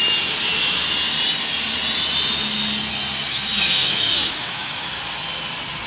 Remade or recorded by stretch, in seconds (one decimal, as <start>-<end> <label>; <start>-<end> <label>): 0.0-3.3 recorded; 3.3-4.9 remade; 4.9-5.9 recorded